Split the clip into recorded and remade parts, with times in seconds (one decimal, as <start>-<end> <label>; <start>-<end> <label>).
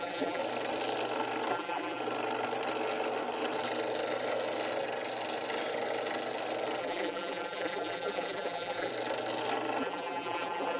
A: 0.0-0.4 remade; 0.4-1.5 recorded; 1.5-2.0 remade; 2.0-6.8 recorded; 6.8-8.9 remade; 8.9-9.8 recorded; 9.8-10.8 remade